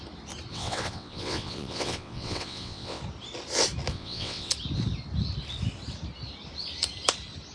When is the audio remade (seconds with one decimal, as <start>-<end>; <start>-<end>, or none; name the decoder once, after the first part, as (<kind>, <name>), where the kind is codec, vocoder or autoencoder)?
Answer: 0.5-3.0 (vocoder, WaveNeXt); 3.9-4.5

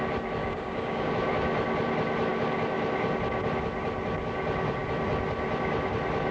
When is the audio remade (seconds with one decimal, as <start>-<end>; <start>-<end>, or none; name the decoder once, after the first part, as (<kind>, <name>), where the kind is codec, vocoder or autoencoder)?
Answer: 0.4-1.1 (codec, DAC)

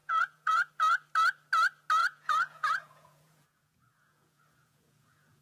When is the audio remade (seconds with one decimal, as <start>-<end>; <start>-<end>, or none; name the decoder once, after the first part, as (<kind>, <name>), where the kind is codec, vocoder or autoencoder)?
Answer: 0.0-0.7 (vocoder, Vocos); 2.0-5.4

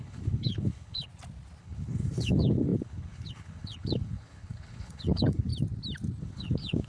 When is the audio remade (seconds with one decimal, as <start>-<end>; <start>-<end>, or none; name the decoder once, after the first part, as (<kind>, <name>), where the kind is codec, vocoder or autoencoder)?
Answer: 0.0-1.1 (codec, HILCodec); 1.6-5.5; 6.2-6.9

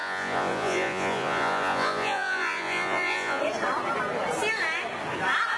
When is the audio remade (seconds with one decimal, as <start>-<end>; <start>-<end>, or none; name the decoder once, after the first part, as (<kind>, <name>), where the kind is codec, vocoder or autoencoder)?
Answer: 0.0-3.4 (vocoder, Vocos)

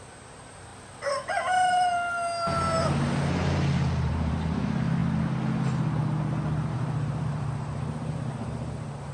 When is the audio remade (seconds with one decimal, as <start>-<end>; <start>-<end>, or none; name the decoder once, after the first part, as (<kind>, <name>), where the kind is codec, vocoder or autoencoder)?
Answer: 0.0-0.7 (vocoder, BigVGAN v2); 4.1-5.0; 6.7-9.1

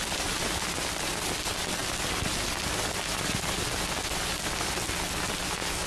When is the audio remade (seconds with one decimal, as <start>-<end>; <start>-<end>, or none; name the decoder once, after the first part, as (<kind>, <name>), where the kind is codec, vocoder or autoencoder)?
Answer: none